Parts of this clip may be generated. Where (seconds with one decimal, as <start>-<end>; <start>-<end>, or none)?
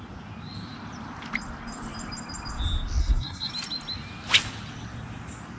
3.0-3.5